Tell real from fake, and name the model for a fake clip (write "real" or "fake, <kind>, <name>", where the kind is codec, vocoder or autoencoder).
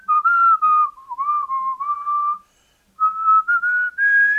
real